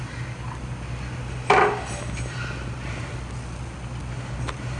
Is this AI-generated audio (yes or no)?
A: no